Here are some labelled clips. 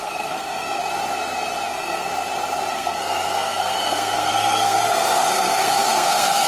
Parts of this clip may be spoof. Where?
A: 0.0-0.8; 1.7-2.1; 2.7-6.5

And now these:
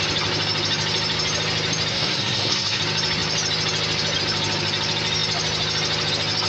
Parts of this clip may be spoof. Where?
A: 1.9-2.8

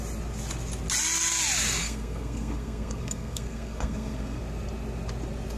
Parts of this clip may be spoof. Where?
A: 1.8-4.4

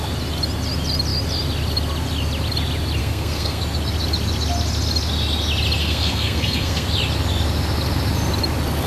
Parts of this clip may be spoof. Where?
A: 3.0-3.6; 5.8-6.9

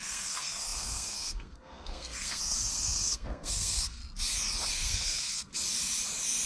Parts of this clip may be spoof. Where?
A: 0.0-4.0; 4.7-5.5

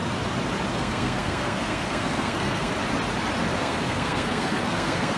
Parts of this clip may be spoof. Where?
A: 0.7-2.7; 3.6-5.2

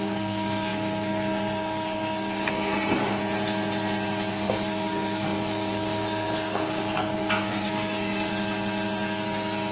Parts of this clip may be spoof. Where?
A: 0.0-3.2; 4.3-8.3